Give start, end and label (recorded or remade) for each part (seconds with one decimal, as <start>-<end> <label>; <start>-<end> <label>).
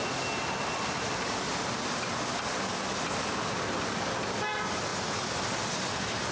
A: 0.0-6.3 recorded